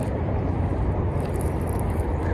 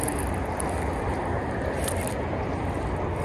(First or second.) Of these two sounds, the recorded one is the second